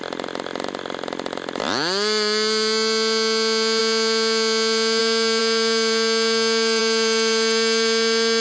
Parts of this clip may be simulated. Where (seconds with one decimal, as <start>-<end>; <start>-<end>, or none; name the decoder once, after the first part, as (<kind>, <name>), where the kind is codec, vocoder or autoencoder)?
none